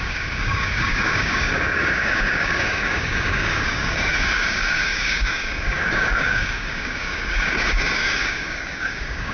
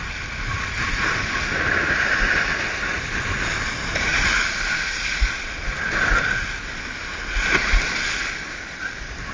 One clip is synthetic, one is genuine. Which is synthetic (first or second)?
first